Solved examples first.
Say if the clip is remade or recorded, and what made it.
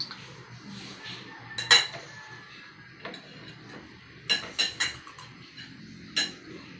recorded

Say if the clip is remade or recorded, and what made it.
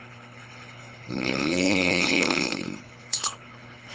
remade, codec, HILCodec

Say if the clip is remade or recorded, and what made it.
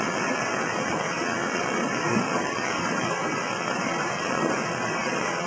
remade, vocoder, WaveNeXt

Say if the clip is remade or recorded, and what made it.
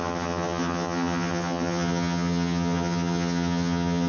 remade, vocoder, HiFi-GAN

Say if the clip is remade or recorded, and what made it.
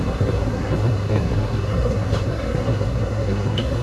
remade, codec, SNAC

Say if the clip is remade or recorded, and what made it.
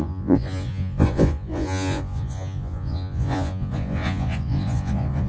remade, vocoder, Vocos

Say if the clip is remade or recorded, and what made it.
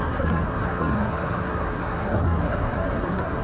remade, codec, SNAC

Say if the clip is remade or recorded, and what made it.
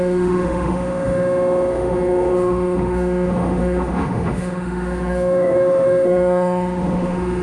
remade, autoencoder, DAC-VAE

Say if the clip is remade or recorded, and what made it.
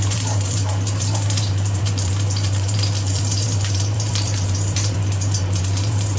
remade, vocoder, BigVGAN v2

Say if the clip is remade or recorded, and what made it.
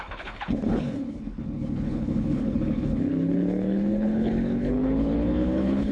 remade, codec, HILCodec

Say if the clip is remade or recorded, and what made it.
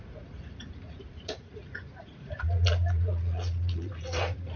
remade, vocoder, Vocos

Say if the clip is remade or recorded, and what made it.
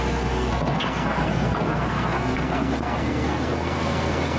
remade, codec, SNAC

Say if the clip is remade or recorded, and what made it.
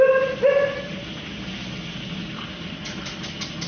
recorded